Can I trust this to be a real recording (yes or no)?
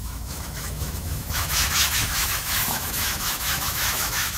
no